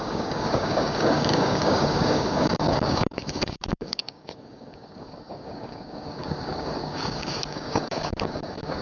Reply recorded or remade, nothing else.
remade